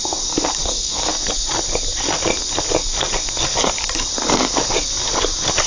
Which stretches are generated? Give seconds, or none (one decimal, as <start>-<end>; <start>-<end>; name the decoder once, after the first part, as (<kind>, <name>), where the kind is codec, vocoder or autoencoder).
0.6-1.1 (codec, SNAC)